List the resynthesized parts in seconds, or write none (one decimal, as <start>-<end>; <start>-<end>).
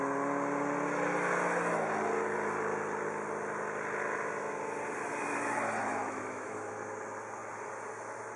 5.8-6.7